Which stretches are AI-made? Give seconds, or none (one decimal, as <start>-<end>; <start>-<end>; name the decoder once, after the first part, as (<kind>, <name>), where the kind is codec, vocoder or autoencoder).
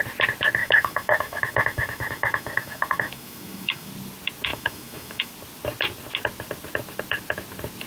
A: 0.6-3.9 (autoencoder, DAC-VAE); 4.5-5.3